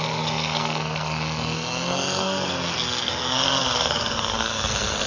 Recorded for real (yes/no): no